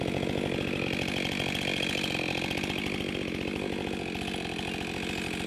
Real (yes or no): yes